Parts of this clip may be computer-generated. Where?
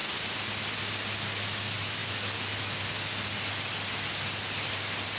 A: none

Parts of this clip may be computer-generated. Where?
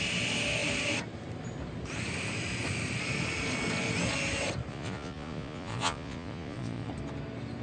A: 4.7-6.9 (vocoder, Vocos)